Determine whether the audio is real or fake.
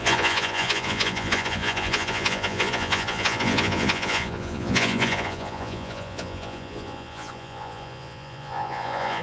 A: fake